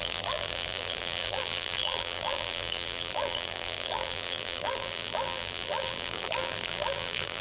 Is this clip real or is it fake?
fake